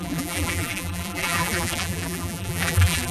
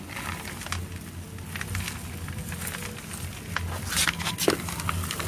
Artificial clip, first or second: first